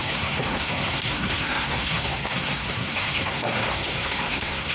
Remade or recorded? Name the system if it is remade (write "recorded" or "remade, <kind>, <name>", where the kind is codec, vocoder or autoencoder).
remade, codec, SNAC